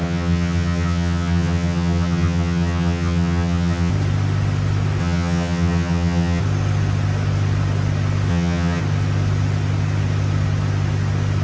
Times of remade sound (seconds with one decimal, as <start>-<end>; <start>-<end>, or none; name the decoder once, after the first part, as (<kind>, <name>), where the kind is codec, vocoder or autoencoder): 0.0-3.9 (vocoder, HiFi-GAN); 5.0-6.4; 8.3-8.8